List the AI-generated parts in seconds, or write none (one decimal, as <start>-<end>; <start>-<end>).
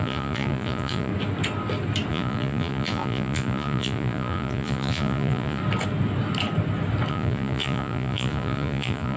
0.0-1.1; 2.1-5.6; 7.1-9.2